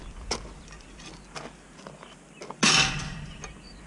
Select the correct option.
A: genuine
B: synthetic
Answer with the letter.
A